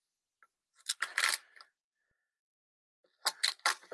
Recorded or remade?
recorded